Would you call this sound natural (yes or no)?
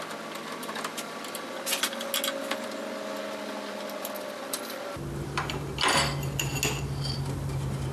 yes